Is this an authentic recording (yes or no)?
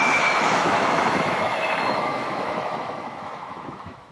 no